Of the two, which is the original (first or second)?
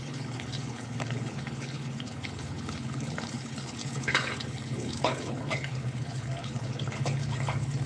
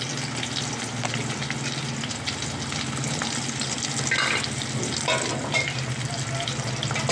second